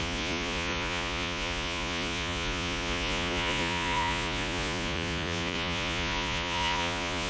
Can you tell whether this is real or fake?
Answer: fake